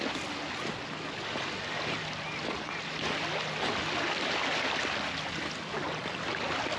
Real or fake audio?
real